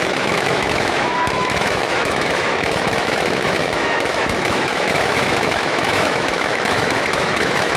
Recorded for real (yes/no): no